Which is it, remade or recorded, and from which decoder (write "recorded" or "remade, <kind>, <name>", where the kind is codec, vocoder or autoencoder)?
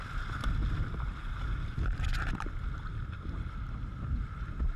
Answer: recorded